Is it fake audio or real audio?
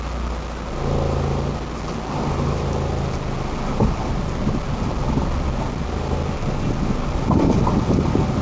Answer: real